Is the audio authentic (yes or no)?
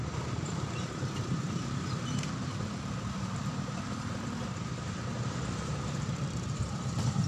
no